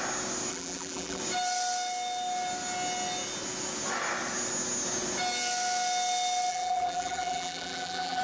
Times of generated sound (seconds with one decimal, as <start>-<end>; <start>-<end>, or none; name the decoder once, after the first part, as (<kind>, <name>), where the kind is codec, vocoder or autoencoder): 0.5-1.2 (vocoder, BigVGAN v2); 6.5-8.2

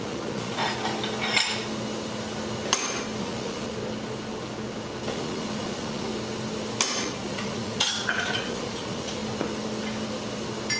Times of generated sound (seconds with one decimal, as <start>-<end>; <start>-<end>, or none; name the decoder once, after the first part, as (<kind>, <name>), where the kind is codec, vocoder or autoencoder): 0.0-0.6 (vocoder, Vocos); 3.2-3.8; 5.1-6.1; 6.9-9.2

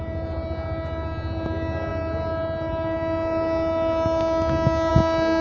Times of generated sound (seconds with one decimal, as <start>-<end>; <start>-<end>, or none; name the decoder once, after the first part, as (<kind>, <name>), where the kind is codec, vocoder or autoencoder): none

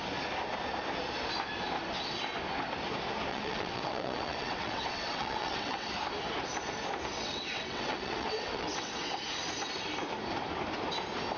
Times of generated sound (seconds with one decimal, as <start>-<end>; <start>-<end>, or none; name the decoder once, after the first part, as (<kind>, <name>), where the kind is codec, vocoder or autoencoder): 3.3-5.9 (vocoder, WaveNeXt); 7.1-9.2

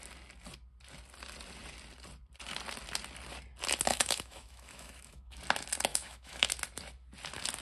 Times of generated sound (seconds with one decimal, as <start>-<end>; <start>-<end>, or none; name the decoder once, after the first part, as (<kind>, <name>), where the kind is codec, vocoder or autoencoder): 3.9-5.4 (autoencoder, DAC-VAE); 5.9-6.5

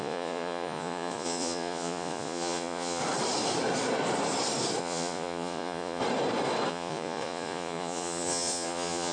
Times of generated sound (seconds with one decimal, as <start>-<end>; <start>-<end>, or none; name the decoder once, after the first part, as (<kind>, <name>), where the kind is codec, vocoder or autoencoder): 0.0-3.0 (vocoder, Vocos); 4.8-6.0; 6.7-9.1

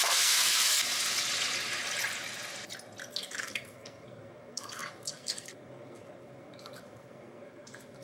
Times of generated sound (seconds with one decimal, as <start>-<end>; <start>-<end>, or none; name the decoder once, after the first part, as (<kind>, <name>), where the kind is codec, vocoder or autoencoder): 0.0-0.8 (codec, SNAC); 3.1-8.0

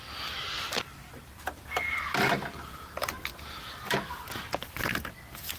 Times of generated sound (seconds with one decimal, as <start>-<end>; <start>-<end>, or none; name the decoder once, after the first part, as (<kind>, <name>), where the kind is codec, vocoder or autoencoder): none